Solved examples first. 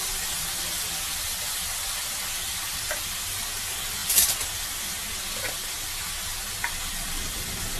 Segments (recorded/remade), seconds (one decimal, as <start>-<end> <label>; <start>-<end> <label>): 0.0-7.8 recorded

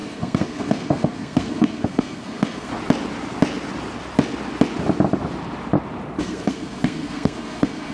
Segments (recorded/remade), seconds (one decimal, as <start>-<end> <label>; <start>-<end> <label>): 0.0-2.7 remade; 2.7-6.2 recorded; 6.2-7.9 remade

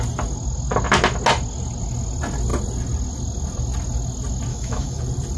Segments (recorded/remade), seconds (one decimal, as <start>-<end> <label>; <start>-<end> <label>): 0.0-4.5 recorded; 4.5-5.0 remade; 5.0-5.4 recorded